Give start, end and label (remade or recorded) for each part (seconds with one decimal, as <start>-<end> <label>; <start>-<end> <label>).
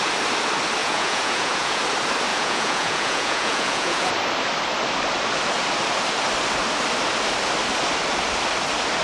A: 0.0-0.8 recorded; 0.8-1.8 remade; 1.8-2.3 recorded; 2.3-4.1 remade; 4.1-9.0 recorded